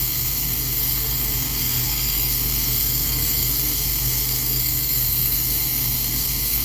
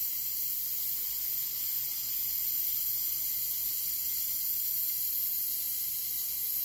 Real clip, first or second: second